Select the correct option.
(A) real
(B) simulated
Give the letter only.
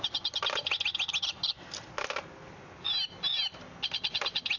A